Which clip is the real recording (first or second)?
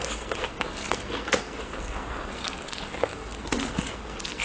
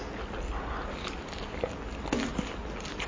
second